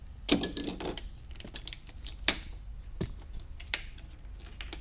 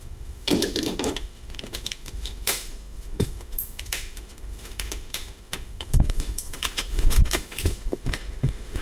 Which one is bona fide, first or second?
first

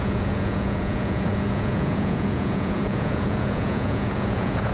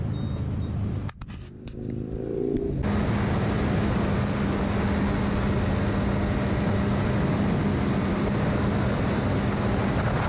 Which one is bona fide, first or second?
second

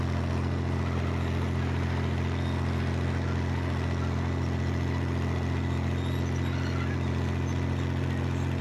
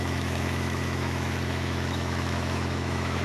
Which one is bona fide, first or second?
first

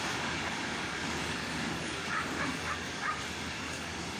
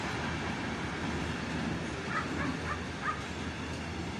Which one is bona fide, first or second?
second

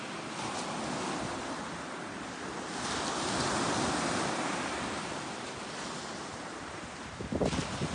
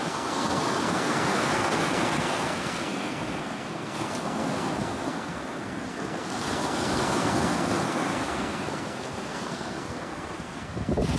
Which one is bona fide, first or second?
first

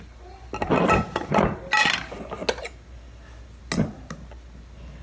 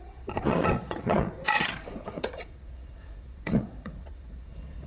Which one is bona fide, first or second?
first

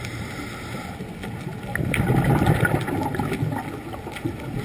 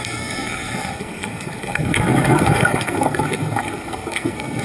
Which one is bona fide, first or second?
first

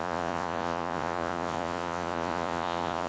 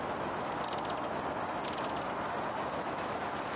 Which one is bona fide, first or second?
second